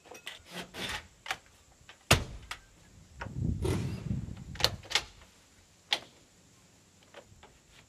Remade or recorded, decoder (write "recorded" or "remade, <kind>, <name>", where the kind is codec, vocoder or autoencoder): recorded